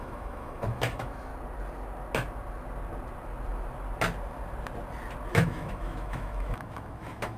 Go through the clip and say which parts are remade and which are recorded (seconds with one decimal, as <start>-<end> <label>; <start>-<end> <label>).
0.0-1.3 remade; 1.3-5.3 recorded; 5.3-7.4 remade